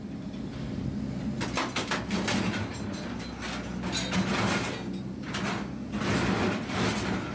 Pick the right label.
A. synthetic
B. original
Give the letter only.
B